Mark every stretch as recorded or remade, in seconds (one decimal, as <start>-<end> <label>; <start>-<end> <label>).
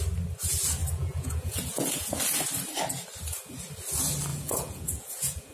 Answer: 0.0-0.8 recorded; 0.8-2.1 remade; 2.1-4.3 recorded; 4.3-5.5 remade